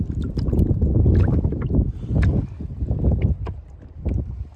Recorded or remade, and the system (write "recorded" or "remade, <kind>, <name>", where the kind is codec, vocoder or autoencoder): recorded